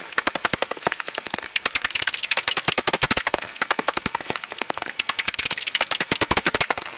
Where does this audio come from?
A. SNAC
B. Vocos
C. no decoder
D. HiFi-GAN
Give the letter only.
A